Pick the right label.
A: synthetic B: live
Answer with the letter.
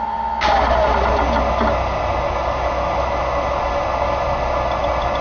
B